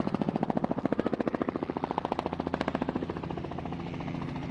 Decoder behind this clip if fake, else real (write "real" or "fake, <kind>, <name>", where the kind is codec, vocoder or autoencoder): real